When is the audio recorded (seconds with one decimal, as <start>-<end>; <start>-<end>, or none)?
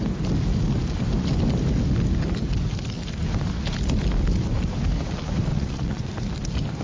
0.0-5.5; 6.1-6.8